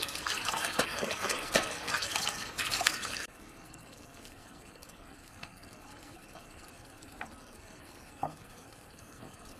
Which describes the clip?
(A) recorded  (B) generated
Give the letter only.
B